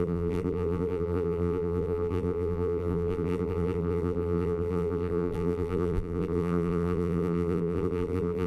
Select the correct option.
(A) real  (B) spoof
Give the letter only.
B